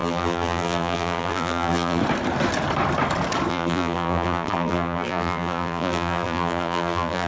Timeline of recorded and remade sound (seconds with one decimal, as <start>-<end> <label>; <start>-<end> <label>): 0.0-2.0 remade; 2.0-3.5 recorded; 3.5-7.3 remade